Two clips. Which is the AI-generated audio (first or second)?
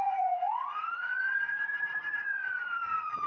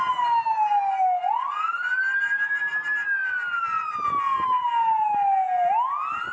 first